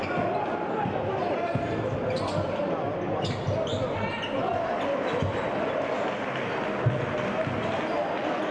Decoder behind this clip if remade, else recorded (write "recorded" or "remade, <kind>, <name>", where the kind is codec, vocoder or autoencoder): recorded